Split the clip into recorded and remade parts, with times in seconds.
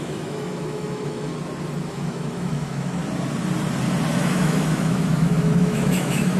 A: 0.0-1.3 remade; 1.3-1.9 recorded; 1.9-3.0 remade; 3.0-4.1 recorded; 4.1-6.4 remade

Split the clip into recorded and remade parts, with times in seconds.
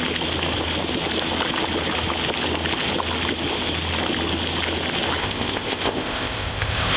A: 0.0-5.2 recorded; 5.2-7.0 remade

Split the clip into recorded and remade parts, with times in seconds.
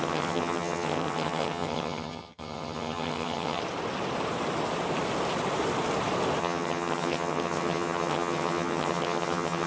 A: 0.0-3.6 remade; 3.6-6.4 recorded; 6.4-9.7 remade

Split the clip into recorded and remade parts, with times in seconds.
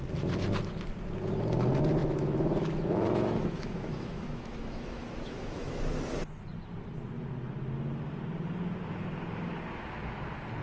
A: 0.0-2.0 recorded; 2.0-5.8 remade; 5.8-10.6 recorded